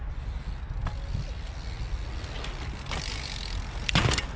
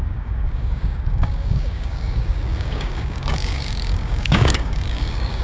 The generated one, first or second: second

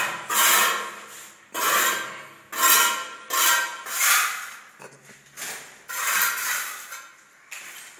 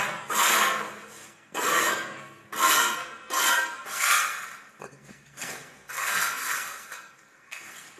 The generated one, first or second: second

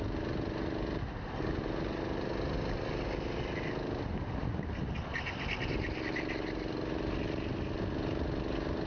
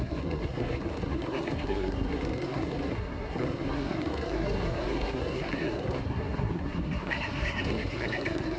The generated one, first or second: second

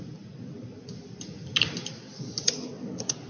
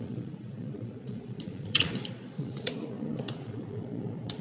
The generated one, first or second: second